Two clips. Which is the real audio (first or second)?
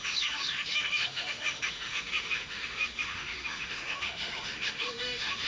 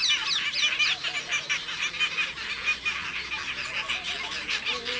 second